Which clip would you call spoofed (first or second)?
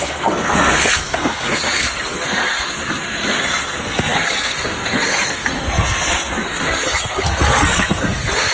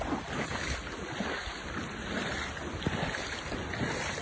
first